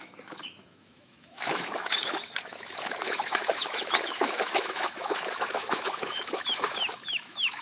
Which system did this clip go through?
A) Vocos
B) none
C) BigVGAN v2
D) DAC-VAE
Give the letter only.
D